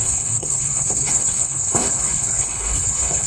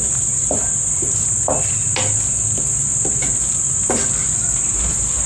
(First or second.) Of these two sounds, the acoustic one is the second